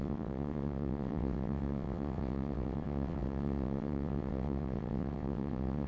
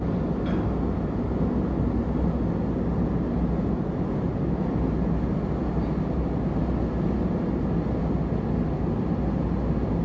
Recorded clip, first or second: second